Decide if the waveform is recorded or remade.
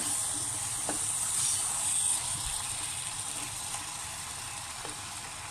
remade